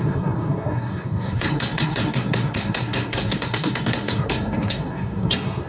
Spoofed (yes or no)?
yes